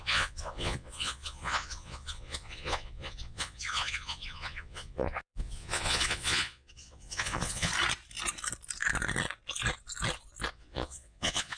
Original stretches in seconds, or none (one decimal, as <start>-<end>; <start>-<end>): 7.7-10.5